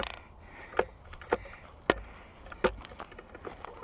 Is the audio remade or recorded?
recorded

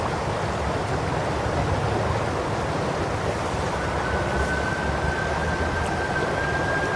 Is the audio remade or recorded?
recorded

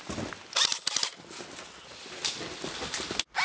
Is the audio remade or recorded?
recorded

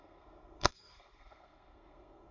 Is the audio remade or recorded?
remade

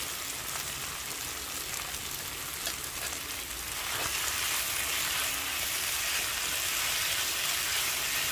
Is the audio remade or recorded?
recorded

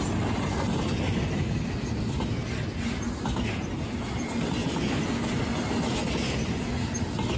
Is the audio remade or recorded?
recorded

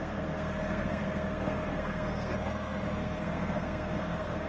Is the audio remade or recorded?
remade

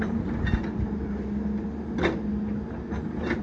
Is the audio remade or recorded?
recorded